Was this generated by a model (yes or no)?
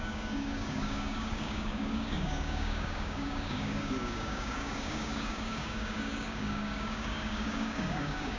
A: yes